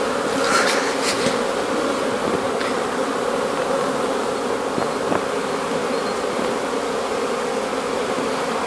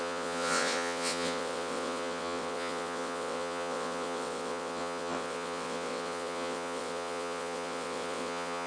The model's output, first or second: second